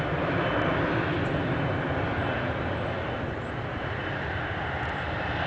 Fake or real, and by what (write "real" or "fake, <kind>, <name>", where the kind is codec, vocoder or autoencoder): real